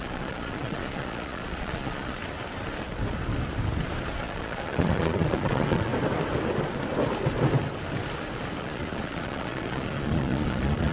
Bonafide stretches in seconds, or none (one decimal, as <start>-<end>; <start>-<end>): 2.2-4.2; 5.9-8.6